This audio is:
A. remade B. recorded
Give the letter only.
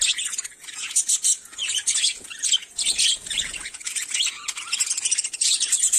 A